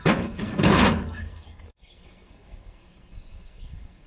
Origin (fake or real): fake